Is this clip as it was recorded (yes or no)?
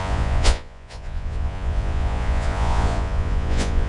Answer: no